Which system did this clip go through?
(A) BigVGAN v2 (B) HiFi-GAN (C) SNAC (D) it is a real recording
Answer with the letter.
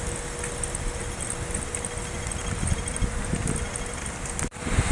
D